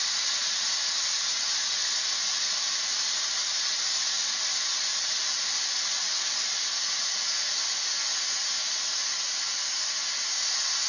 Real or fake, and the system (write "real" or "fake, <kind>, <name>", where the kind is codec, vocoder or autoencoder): real